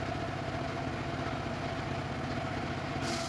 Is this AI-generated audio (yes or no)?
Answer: no